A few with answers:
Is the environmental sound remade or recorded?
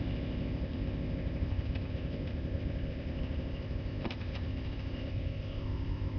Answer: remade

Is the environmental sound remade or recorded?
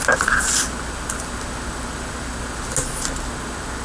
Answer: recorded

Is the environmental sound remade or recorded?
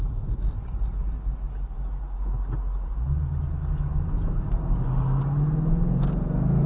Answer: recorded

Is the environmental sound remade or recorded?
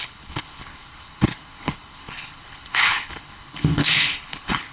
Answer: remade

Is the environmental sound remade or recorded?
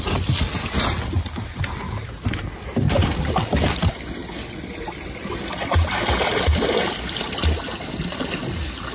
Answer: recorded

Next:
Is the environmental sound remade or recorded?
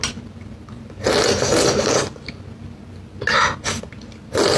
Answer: recorded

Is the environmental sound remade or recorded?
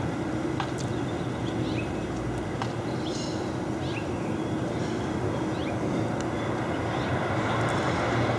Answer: recorded